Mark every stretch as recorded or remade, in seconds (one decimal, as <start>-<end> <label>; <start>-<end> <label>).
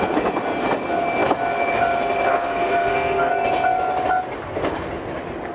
0.0-2.3 recorded; 2.3-3.3 remade; 3.3-5.5 recorded